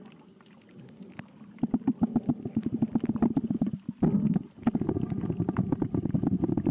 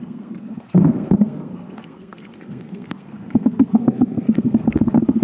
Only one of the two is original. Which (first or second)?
first